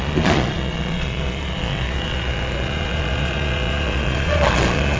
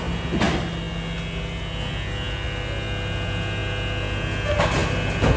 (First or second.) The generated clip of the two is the first